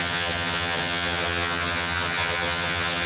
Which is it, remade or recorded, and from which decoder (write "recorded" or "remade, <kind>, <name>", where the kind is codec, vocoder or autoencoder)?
remade, vocoder, HiFi-GAN